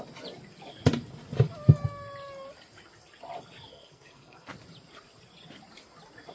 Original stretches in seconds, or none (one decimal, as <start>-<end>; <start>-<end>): 0.0-3.7; 4.5-6.3